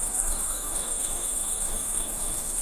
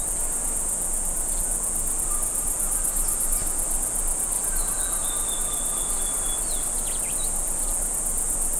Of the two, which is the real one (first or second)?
second